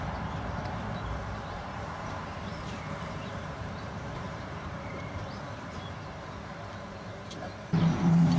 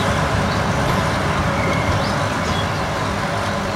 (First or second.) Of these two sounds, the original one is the second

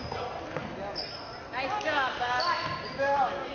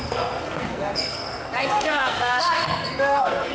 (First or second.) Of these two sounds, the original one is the first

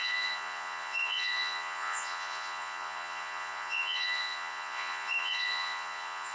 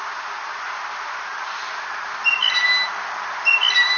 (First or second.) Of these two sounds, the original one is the second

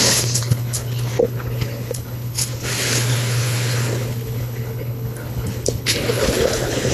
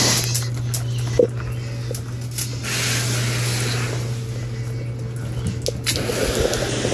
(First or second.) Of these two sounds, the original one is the second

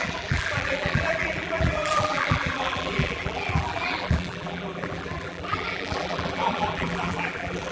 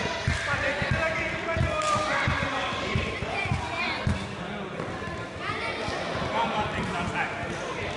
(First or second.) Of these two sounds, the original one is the second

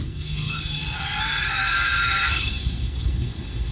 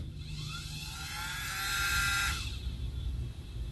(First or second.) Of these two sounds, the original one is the second